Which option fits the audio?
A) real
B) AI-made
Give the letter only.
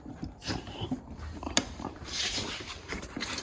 B